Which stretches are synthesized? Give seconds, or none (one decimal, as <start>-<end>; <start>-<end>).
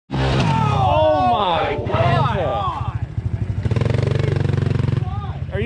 1.4-2.1